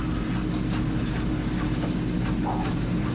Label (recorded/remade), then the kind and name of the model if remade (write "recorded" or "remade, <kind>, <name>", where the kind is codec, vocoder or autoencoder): recorded